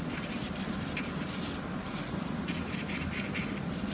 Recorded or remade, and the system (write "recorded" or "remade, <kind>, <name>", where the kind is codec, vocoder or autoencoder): recorded